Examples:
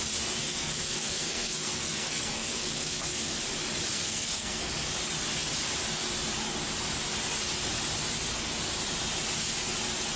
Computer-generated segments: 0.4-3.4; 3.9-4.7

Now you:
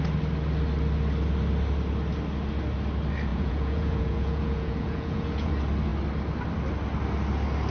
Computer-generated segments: 3.3-5.5

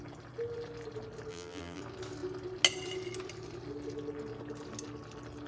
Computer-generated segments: 1.3-1.8

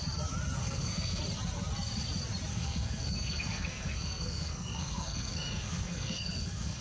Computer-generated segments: 0.6-1.2; 2.5-6.8

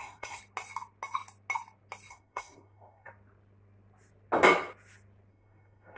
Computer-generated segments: 0.0-0.4; 2.1-3.1; 5.3-6.0

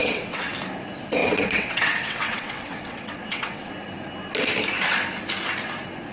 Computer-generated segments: 0.0-0.5; 1.2-3.7

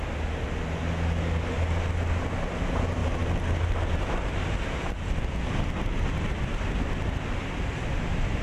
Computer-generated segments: 3.0-6.4

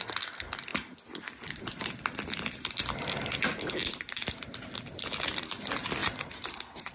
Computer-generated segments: 0.7-4.8